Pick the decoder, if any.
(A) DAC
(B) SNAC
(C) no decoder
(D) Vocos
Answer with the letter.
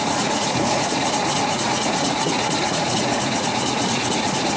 D